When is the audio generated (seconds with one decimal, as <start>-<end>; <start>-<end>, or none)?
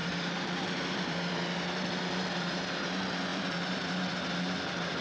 0.0-1.3; 3.3-4.1